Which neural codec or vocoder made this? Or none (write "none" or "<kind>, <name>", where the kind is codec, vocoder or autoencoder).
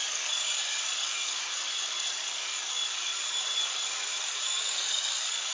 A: codec, DAC